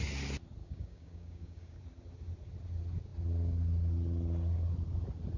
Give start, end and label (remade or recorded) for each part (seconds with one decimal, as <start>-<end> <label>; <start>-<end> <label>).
0.0-0.6 recorded; 0.6-1.8 remade; 1.8-5.4 recorded